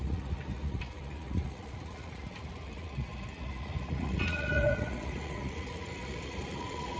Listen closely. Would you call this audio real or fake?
fake